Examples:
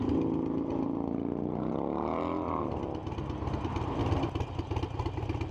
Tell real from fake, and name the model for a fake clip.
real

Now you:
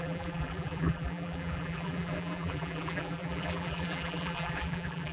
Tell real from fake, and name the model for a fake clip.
fake, vocoder, BigVGAN v2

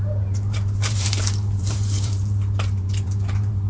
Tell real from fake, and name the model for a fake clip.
fake, vocoder, BigVGAN v2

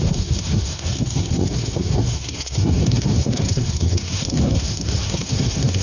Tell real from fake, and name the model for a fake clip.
fake, codec, SNAC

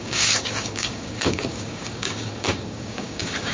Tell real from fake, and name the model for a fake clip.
fake, codec, DAC